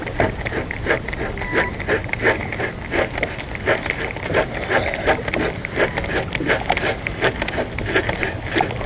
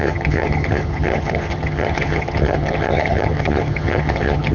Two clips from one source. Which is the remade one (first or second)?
second